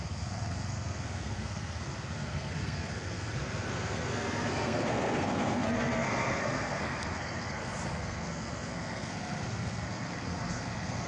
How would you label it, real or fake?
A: fake